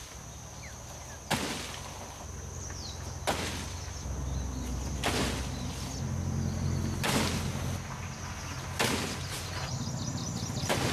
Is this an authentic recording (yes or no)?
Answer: yes